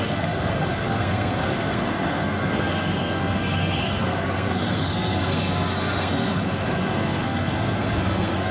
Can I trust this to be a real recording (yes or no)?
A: no